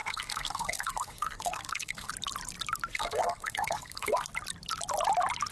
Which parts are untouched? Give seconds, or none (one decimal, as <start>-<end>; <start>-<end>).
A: 2.1-2.9; 4.3-5.5